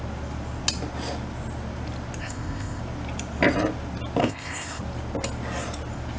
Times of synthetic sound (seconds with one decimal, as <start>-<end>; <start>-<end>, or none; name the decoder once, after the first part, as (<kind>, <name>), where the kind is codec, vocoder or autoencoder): 2.2-2.8 (codec, ZipCodec); 4.2-4.8